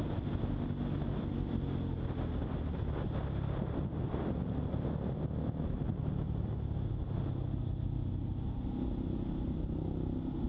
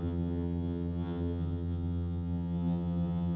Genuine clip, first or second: first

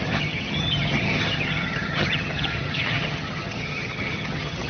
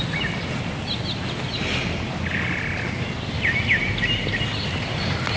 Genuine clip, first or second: second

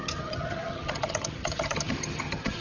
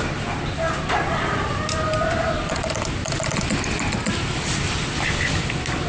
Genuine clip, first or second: second